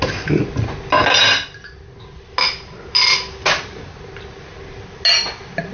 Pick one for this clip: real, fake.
real